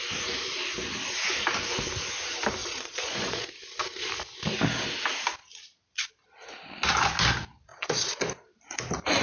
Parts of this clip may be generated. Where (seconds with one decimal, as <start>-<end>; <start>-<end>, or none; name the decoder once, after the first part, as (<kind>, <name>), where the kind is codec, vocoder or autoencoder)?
2.6-3.5 (vocoder, Vocos); 5.4-6.1; 7.7-8.2